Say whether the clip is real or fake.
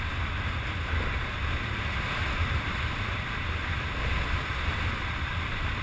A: real